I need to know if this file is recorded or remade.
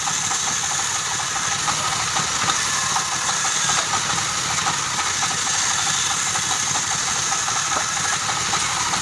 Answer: recorded